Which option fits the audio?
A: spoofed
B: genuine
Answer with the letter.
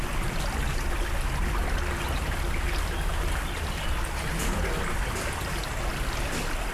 B